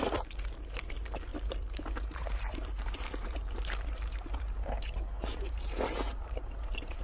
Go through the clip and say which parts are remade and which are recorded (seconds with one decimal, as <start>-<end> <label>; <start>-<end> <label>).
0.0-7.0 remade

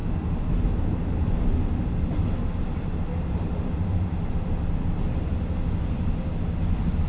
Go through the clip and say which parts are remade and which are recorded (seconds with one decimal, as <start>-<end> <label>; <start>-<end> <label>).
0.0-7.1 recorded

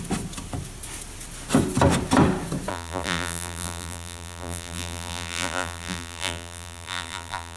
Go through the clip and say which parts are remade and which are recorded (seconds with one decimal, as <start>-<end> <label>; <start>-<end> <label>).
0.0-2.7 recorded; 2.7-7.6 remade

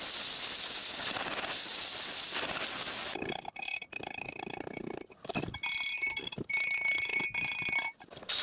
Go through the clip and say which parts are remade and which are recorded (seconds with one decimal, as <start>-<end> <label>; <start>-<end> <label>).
0.0-0.8 recorded; 0.8-1.9 remade; 1.9-8.4 recorded